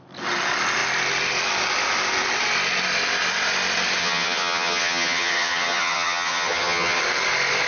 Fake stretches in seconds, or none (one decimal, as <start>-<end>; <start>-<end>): 4.0-7.0